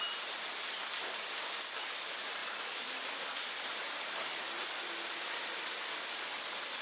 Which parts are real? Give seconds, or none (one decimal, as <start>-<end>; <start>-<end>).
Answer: 0.0-6.8

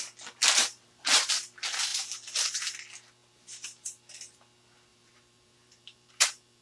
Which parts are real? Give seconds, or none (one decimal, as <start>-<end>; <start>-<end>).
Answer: 0.0-0.4; 1.1-1.9; 2.6-3.2; 4.4-4.9

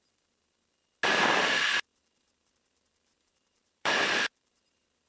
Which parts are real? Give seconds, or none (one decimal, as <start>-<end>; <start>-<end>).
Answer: 0.0-1.9

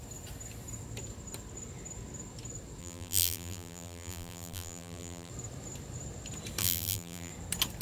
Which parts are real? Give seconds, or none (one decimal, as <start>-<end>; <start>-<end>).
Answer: 0.0-2.8; 5.3-6.6; 7.3-7.8

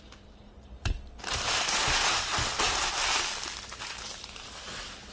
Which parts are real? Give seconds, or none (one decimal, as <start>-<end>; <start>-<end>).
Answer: 2.3-3.7

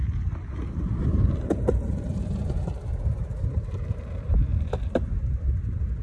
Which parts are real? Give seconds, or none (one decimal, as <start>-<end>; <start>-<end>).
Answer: 0.0-0.4; 4.0-6.0

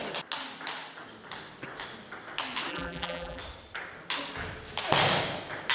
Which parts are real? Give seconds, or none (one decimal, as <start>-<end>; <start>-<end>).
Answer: 0.0-2.7; 3.4-5.7

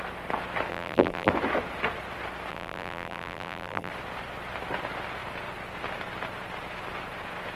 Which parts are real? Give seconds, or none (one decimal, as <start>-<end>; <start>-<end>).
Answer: 0.0-0.7; 1.3-2.5; 3.9-7.6